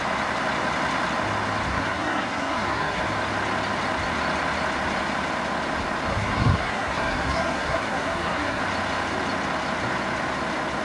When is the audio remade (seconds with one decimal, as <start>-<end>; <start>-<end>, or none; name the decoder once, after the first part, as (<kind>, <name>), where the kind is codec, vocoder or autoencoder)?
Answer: 1.7-3.0 (codec, SNAC); 6.1-8.6